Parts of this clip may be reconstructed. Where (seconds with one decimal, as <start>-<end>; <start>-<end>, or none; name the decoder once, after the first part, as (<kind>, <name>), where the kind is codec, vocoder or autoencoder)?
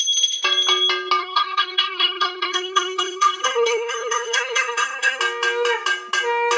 1.2-5.2 (codec, SNAC)